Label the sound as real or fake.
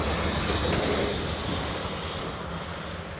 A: real